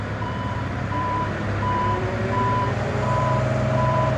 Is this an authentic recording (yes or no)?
no